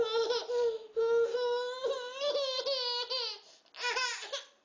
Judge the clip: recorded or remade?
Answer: recorded